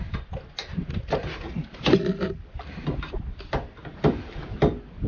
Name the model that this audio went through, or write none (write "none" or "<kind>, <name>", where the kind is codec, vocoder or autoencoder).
none